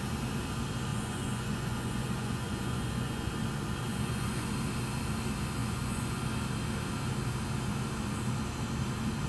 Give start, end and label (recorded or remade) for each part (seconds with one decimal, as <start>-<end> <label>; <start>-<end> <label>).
0.0-0.9 recorded; 0.9-3.3 remade; 3.3-3.9 recorded; 3.9-4.5 remade; 4.5-5.6 recorded; 5.6-6.2 remade; 6.2-9.3 recorded

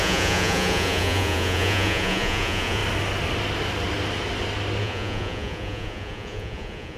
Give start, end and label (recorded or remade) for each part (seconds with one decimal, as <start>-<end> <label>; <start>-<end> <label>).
0.0-2.8 remade; 2.8-4.8 recorded; 4.8-7.0 remade

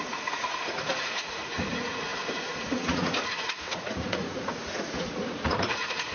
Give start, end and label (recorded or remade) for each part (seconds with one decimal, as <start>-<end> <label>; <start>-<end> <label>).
0.0-6.1 remade

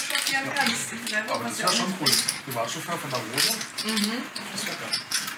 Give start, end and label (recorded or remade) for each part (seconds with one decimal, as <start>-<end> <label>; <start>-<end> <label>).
0.0-5.4 recorded